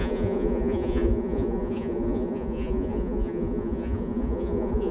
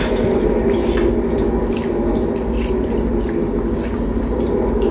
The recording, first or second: second